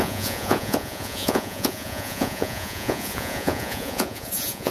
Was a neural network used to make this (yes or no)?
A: yes